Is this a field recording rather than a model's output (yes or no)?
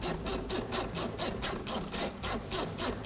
yes